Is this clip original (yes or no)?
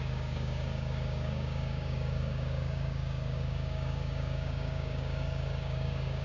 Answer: no